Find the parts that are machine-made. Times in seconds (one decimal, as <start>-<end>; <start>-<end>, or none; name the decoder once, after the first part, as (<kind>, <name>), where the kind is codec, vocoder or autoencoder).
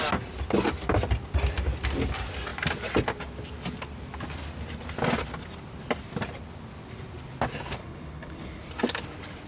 7.8-8.6 (codec, HILCodec)